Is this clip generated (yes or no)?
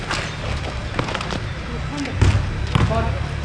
no